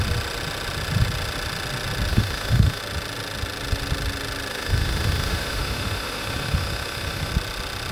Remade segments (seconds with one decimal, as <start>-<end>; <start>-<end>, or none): 2.1-2.8; 4.5-7.3